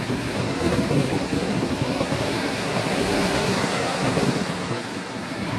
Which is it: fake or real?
fake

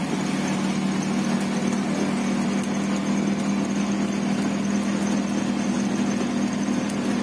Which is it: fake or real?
real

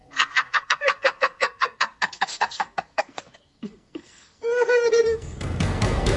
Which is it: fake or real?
fake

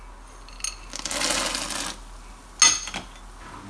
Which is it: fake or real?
real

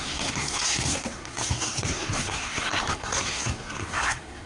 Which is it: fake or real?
fake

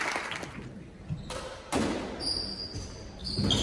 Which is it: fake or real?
real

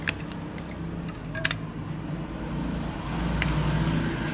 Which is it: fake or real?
real